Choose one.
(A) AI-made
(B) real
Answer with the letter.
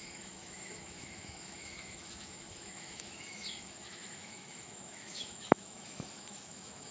A